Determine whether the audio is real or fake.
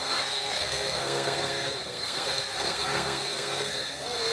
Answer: fake